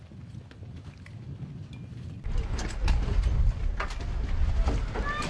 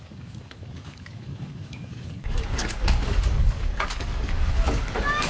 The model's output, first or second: second